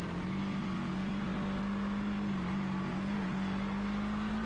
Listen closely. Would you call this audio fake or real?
real